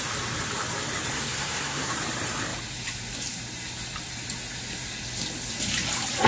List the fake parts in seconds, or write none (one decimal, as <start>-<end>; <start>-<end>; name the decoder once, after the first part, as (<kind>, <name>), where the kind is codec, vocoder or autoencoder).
1.1-1.9 (codec, SNAC)